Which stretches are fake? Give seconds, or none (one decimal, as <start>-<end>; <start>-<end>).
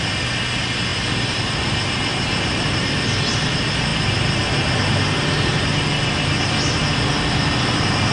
0.9-1.6; 2.1-2.9